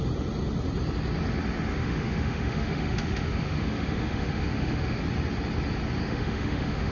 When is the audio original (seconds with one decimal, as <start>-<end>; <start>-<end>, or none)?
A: 0.0-1.7; 5.0-6.0